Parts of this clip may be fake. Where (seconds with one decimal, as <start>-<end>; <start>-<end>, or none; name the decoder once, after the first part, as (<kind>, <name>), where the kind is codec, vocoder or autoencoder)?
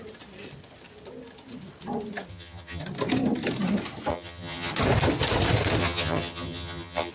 2.3-2.8 (vocoder, HiFi-GAN); 4.1-4.7; 5.8-7.1